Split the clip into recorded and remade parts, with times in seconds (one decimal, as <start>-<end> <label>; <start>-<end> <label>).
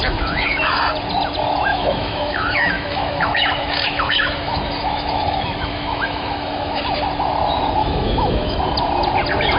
0.0-0.8 remade; 0.8-1.7 recorded; 1.7-6.8 remade; 6.8-7.8 recorded; 7.8-8.6 remade; 8.6-9.6 recorded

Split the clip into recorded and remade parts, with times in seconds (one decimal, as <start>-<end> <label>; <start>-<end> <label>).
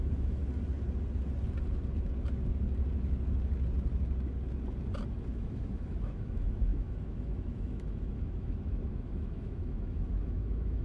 0.0-0.4 remade; 0.4-5.2 recorded; 5.2-10.8 remade